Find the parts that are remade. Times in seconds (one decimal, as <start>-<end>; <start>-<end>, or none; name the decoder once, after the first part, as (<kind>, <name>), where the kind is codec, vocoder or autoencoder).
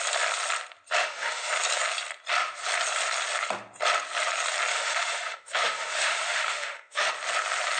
1.0-1.5 (autoencoder, DAC-VAE); 4.7-7.1